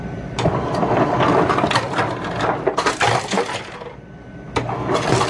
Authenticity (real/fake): real